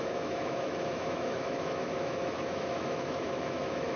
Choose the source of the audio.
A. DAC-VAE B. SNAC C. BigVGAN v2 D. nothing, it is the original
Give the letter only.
A